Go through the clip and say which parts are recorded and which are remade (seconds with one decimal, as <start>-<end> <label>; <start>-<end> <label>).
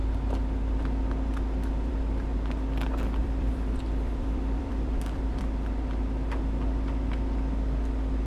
0.0-3.2 recorded; 3.2-5.4 remade; 5.4-8.3 recorded